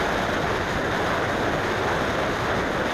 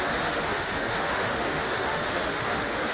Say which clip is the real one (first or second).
first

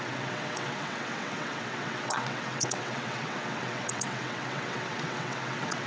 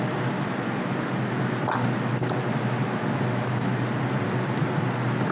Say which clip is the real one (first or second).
second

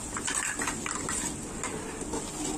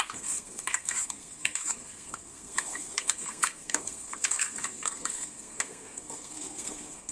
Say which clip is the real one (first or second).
first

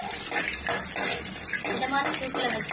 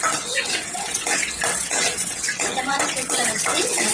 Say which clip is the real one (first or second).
first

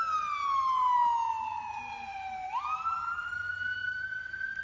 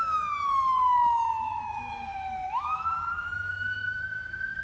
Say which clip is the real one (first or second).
first